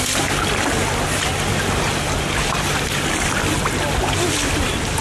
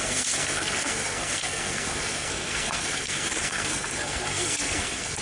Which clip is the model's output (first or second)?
second